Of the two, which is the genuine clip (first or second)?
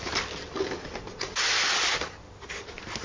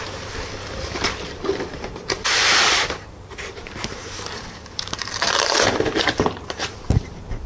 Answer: first